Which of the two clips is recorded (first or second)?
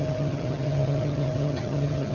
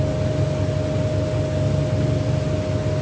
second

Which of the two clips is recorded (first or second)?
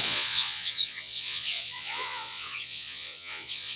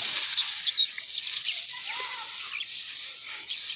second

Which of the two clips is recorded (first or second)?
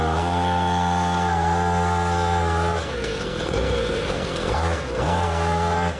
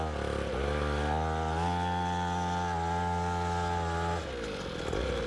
second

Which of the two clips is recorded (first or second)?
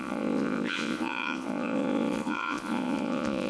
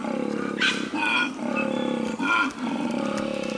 second